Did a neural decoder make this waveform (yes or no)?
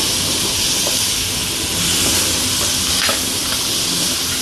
no